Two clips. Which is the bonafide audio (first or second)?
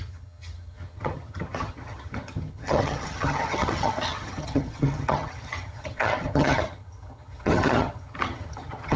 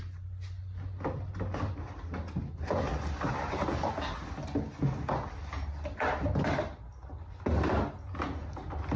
second